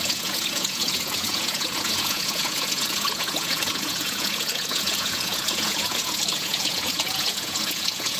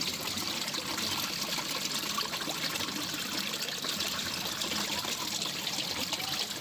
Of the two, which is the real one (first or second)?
second